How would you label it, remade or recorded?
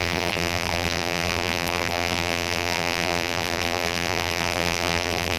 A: remade